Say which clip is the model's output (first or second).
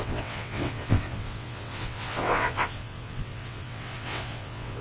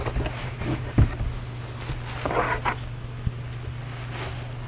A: first